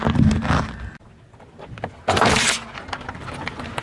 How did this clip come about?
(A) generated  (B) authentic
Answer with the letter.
B